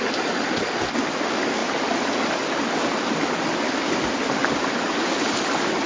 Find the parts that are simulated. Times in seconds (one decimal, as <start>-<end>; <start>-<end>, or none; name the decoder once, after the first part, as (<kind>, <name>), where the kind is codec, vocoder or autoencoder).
1.6-4.5 (vocoder, BigVGAN v2)